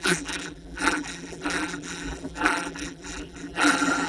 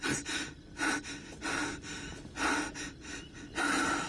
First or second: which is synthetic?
first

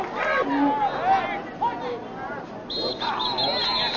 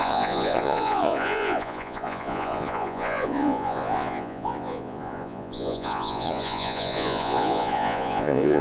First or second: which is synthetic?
second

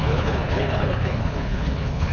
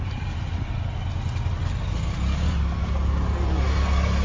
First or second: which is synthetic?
first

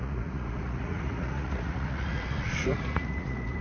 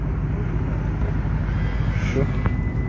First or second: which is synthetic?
first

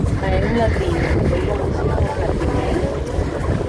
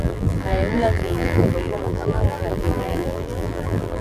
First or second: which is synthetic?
second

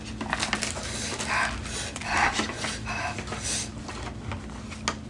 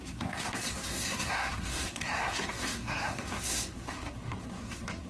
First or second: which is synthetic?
second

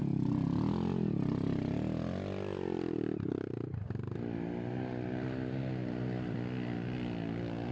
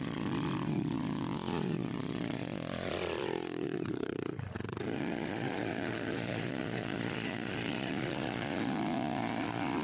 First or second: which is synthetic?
second